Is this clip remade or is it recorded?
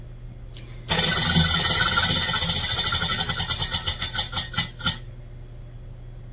recorded